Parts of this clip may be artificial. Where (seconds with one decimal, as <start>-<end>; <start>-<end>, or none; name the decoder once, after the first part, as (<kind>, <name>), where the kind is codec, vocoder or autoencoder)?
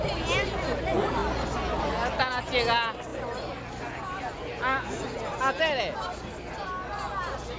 none